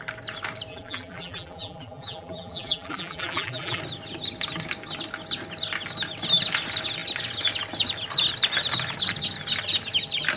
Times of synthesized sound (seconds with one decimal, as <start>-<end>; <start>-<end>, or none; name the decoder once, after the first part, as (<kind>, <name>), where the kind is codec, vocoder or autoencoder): 0.7-3.8 (vocoder, BigVGAN v2)